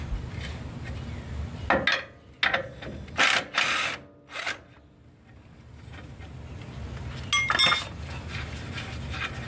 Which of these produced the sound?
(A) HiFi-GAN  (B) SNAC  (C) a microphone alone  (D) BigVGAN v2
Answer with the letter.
C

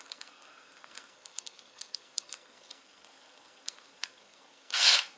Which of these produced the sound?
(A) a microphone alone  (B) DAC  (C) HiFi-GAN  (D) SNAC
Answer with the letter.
D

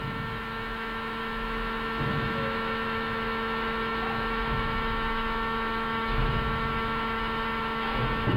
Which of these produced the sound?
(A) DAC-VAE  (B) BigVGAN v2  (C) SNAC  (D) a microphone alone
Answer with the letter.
A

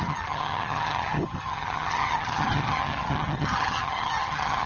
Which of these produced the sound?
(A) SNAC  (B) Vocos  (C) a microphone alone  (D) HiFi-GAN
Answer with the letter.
D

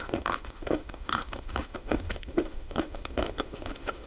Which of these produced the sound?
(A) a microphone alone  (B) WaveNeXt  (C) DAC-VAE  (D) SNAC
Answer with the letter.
C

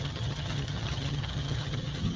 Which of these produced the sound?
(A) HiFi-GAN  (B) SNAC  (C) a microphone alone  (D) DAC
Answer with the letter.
A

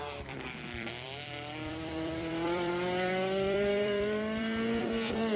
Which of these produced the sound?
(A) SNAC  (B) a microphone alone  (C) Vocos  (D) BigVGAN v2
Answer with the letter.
D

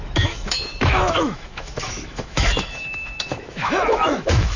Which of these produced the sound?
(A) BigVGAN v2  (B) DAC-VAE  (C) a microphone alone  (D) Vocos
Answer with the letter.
B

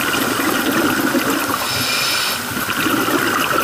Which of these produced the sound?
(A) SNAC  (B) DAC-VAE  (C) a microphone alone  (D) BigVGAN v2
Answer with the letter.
C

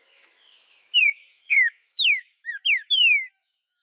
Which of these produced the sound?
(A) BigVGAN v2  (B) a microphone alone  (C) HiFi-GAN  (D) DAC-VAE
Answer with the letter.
D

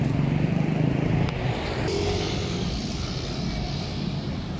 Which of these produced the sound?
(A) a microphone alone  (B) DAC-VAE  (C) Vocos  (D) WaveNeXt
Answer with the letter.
A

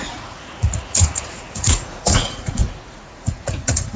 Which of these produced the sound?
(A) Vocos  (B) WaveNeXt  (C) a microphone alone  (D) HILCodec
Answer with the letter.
A